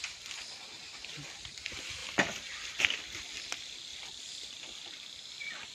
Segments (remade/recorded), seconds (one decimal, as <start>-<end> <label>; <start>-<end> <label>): 0.0-5.7 recorded